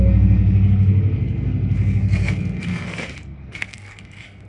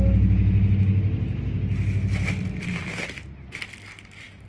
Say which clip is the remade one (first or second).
first